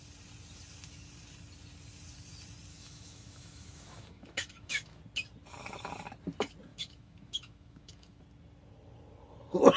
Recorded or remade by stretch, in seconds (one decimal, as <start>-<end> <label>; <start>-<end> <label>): 0.0-2.7 recorded; 2.7-5.0 remade; 5.0-6.7 recorded; 6.7-8.2 remade; 8.2-9.8 recorded